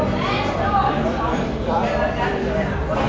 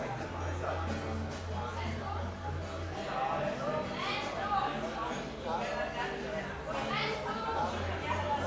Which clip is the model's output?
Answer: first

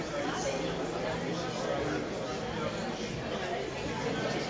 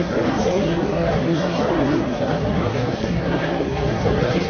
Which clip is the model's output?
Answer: second